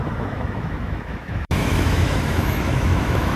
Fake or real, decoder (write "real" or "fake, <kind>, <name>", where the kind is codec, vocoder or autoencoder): fake, autoencoder, DAC-VAE